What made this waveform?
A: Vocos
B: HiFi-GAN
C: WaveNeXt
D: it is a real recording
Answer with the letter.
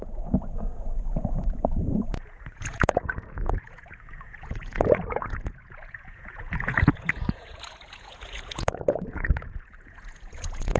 A